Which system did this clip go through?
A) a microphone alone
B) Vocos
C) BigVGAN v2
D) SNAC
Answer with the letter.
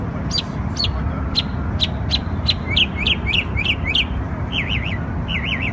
A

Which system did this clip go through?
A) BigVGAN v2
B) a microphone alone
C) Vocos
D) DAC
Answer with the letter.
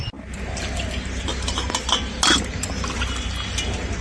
B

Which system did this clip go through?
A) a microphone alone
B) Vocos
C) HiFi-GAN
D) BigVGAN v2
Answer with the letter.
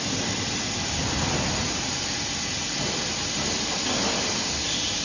A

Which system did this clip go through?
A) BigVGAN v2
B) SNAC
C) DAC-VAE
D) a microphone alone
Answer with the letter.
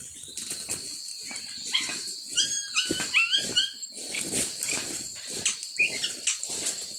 D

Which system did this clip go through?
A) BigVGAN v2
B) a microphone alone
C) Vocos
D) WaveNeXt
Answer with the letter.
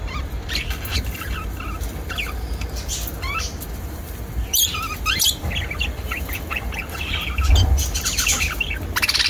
A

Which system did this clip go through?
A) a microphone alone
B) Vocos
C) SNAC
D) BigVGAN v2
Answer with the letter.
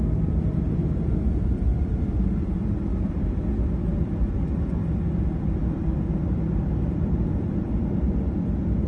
D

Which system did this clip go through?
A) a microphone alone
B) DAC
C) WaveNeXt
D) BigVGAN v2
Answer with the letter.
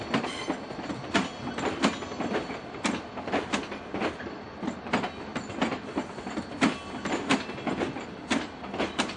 A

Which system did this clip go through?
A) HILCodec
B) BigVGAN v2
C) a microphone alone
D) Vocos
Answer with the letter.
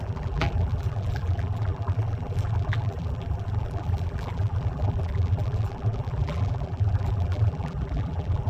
B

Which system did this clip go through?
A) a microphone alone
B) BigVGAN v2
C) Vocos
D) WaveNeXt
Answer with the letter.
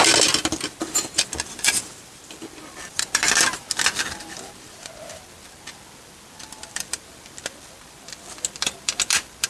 B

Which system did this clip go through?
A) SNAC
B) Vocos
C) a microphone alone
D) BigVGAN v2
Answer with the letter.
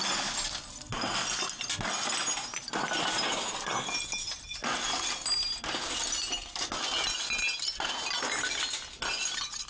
C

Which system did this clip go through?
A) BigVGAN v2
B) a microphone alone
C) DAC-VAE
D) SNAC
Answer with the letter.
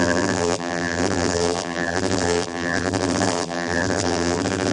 A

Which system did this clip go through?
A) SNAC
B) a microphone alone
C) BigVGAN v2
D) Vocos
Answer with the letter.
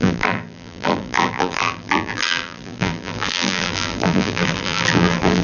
C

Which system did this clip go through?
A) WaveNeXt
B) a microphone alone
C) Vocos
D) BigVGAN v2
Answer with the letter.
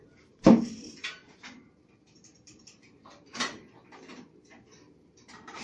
D